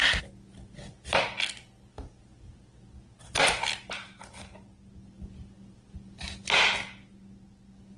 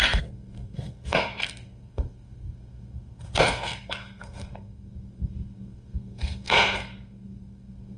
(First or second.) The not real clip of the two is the second